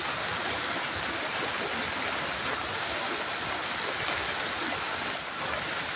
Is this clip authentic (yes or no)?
yes